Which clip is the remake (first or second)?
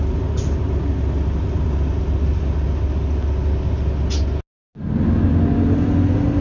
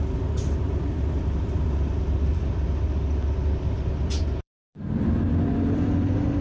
second